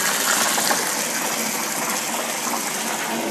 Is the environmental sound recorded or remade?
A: recorded